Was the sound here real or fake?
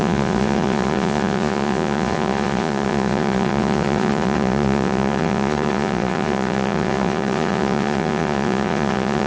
fake